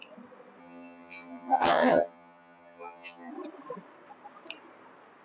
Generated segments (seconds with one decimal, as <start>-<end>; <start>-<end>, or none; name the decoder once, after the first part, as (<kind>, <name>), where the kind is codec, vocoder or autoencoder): 0.6-3.3 (vocoder, HiFi-GAN)